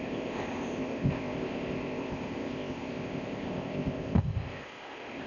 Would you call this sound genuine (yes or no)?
no